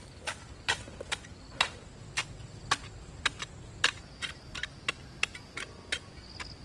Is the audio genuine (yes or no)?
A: yes